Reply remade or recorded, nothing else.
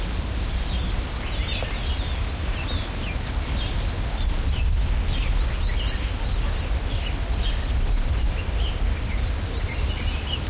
recorded